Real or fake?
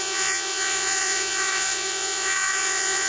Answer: fake